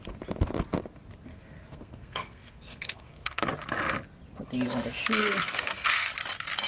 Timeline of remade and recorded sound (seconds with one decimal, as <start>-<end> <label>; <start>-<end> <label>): 0.0-1.3 recorded; 1.3-3.4 remade; 3.4-5.2 recorded; 5.2-6.1 remade; 6.1-6.7 recorded

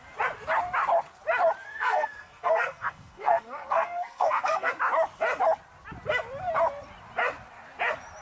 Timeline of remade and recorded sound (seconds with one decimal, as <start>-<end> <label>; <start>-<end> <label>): 0.0-1.6 recorded; 1.6-4.7 remade; 4.7-8.2 recorded

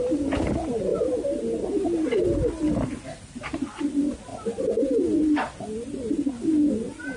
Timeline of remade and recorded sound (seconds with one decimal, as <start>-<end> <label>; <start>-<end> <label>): 0.0-7.2 recorded

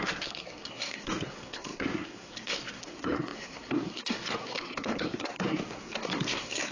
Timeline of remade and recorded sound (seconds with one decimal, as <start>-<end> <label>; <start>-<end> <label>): 0.0-6.7 remade

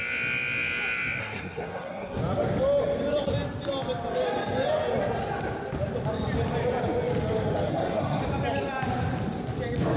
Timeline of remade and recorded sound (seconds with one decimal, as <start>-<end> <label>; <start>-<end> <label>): 0.0-1.2 recorded; 1.2-2.2 remade; 2.2-7.7 recorded; 7.7-8.2 remade; 8.2-10.0 recorded

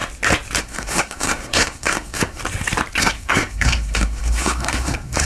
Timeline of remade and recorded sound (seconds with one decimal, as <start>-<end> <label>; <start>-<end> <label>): 0.0-0.6 recorded; 0.6-2.4 remade; 2.4-3.0 recorded; 3.0-5.2 remade

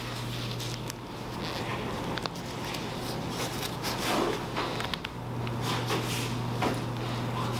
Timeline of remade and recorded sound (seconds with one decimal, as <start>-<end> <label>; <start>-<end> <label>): 0.0-7.6 recorded